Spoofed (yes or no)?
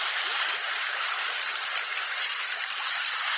no